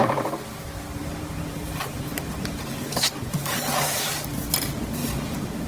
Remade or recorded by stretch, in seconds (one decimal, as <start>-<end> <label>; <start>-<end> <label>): 0.0-0.9 recorded; 0.9-4.3 remade; 4.3-5.0 recorded; 5.0-5.7 remade